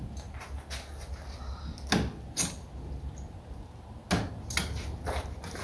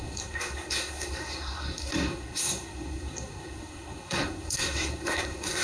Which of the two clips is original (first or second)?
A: first